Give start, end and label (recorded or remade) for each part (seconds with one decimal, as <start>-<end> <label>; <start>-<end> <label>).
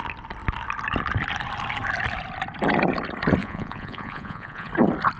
0.0-3.4 recorded; 3.4-4.7 remade; 4.7-5.2 recorded